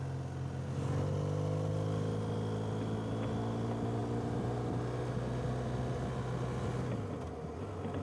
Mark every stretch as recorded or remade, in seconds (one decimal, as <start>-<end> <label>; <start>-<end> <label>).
0.0-8.0 recorded